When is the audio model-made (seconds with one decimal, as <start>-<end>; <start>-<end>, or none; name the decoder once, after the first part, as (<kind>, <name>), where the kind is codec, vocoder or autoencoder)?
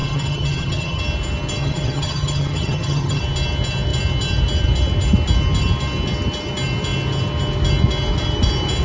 0.0-1.0 (vocoder, HiFi-GAN); 1.6-3.2